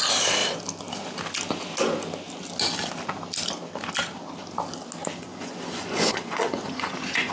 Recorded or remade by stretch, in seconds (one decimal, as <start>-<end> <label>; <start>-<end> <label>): 0.0-5.0 recorded; 5.0-7.3 remade